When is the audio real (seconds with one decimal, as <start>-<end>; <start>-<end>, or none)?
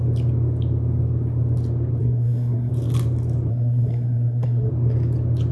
0.0-2.0; 2.7-3.5; 4.7-5.5